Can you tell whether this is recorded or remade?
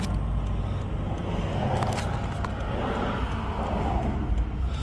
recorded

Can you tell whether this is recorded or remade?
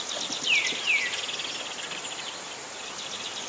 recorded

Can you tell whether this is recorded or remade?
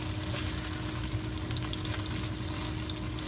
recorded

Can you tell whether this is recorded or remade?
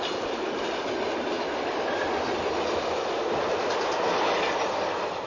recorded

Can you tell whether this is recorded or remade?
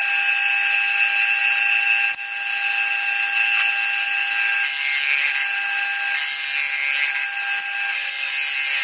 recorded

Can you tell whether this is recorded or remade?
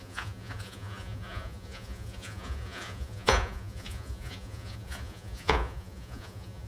remade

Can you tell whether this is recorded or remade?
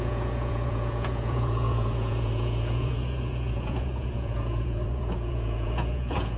remade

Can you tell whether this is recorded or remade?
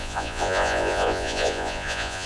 remade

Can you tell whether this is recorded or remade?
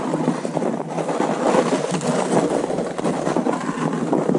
recorded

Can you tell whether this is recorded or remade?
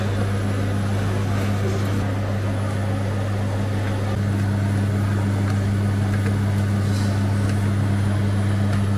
recorded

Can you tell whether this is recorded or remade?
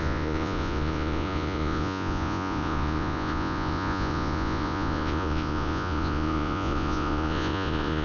remade